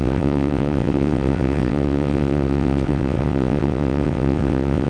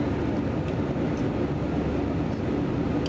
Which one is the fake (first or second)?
first